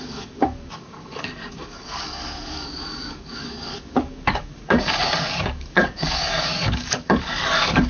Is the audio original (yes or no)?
no